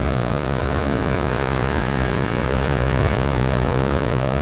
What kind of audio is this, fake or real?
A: fake